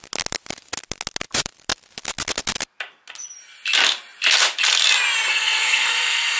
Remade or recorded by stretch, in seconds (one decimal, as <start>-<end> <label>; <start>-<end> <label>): 0.0-5.3 recorded; 5.3-6.4 remade